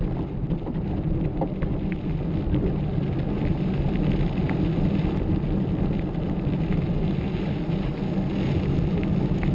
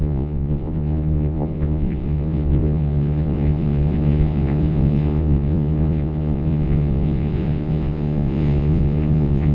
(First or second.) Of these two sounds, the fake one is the second